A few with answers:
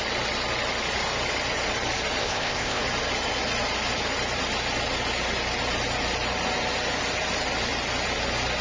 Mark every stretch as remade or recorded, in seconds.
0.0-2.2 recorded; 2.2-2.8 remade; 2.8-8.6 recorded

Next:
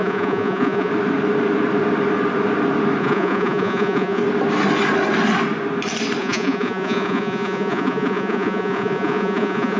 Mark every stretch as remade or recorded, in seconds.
0.0-0.9 remade; 0.9-3.0 recorded; 3.0-4.2 remade; 4.2-6.2 recorded; 6.2-9.8 remade

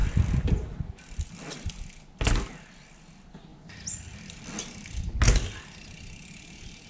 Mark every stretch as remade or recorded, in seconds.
0.0-6.9 recorded

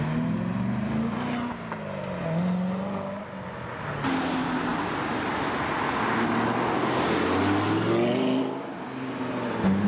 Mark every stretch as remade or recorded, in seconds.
0.0-9.9 recorded

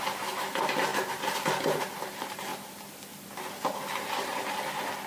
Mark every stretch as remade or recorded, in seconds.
0.0-0.9 recorded; 0.9-1.8 remade; 1.8-5.1 recorded

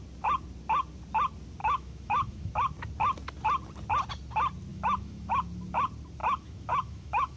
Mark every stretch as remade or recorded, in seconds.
0.0-1.6 recorded; 1.6-2.5 remade; 2.5-4.7 recorded; 4.7-5.3 remade; 5.3-6.2 recorded; 6.2-7.4 remade

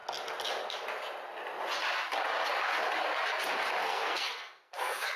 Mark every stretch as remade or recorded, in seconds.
0.0-3.8 recorded; 3.8-5.2 remade

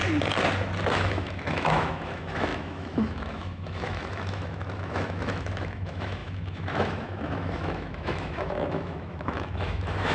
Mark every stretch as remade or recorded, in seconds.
0.0-0.9 recorded; 0.9-10.1 remade